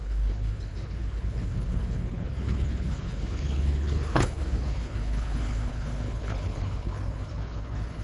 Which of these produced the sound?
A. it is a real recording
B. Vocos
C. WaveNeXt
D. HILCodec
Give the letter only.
D